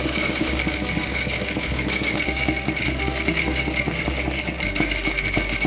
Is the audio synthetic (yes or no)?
yes